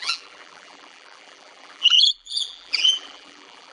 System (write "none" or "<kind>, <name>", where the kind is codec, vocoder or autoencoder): vocoder, BigVGAN v2